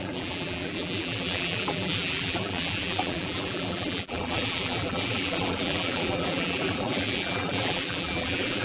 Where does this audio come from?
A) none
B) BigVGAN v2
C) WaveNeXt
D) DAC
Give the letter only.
B